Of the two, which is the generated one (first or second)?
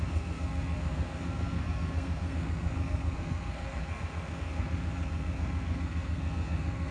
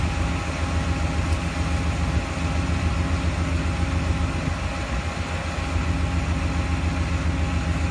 first